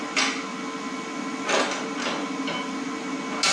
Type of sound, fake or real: real